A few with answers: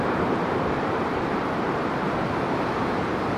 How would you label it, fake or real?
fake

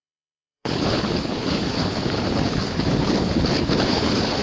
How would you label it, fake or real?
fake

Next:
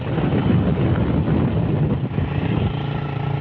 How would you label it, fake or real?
real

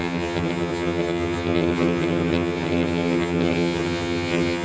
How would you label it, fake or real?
fake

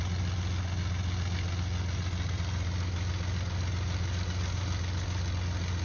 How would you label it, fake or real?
real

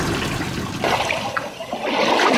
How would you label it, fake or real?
real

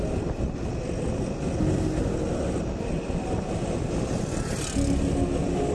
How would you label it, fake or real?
real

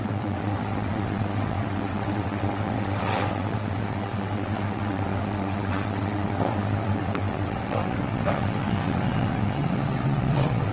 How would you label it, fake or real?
fake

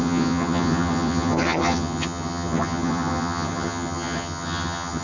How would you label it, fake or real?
fake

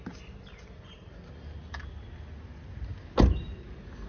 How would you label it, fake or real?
real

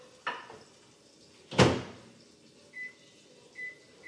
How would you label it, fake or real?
real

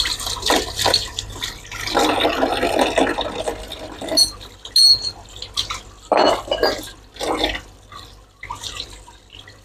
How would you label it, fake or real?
real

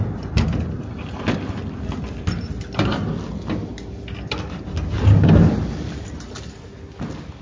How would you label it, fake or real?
real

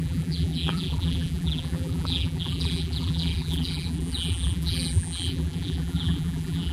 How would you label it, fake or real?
fake